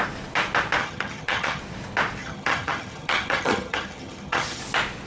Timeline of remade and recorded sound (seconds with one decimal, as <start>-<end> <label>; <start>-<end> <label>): 0.0-0.8 recorded; 0.8-1.6 remade; 1.6-2.2 recorded; 2.2-4.6 remade; 4.6-5.1 recorded